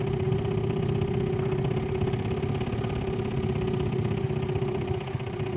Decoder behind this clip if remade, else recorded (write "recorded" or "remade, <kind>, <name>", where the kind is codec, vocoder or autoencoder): recorded